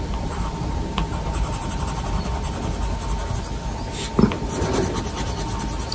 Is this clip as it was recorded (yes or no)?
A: yes